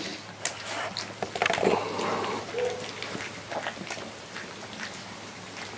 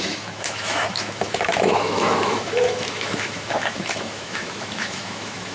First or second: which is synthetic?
second